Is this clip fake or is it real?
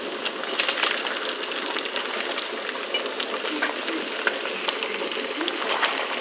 real